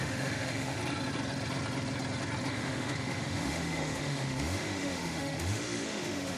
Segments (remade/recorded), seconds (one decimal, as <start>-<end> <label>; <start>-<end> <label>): 0.0-0.8 remade; 0.8-2.5 recorded; 2.5-6.4 remade